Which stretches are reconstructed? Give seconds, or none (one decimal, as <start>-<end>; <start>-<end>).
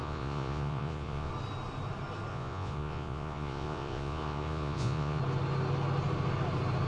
0.0-1.3; 2.3-5.2